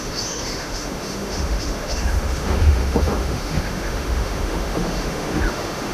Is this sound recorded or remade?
remade